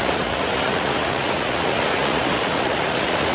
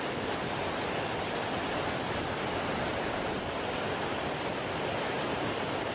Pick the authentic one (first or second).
second